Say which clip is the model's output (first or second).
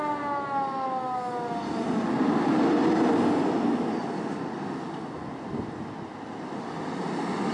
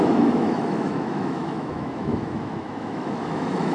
second